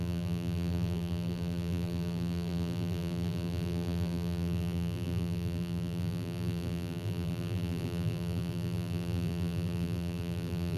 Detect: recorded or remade remade